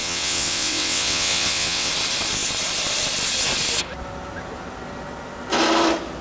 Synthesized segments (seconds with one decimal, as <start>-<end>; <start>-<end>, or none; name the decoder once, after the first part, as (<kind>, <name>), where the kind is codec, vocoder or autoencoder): 0.0-1.9 (vocoder, WaveNeXt)